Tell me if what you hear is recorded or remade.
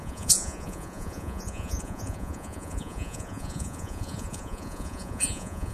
remade